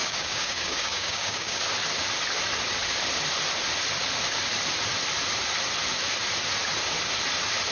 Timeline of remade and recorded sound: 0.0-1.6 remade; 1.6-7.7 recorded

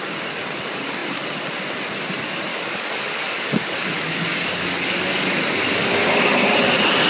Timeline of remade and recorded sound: 0.0-2.5 recorded; 2.5-5.9 remade; 5.9-7.1 recorded

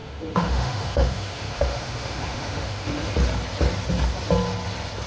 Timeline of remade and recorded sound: 0.0-3.1 remade; 3.1-5.1 recorded

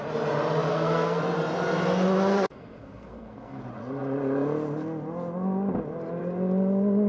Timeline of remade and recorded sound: 0.0-0.7 recorded; 0.7-1.2 remade; 1.2-2.3 recorded; 2.3-3.6 remade; 3.6-7.1 recorded

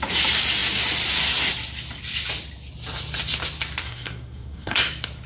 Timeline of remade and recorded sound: 0.0-3.8 recorded; 3.8-4.8 remade; 4.8-5.3 recorded

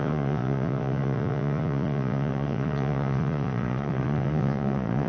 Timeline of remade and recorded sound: 0.0-5.1 remade

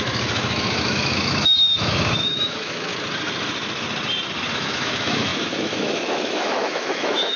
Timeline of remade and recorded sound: 0.0-2.9 remade; 2.9-4.5 recorded; 4.5-7.4 remade